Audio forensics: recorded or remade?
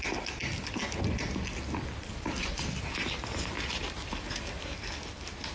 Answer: recorded